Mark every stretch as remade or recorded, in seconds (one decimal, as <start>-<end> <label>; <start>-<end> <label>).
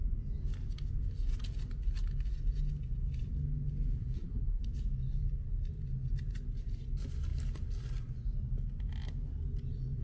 0.0-4.0 recorded; 4.0-4.6 remade; 4.6-10.0 recorded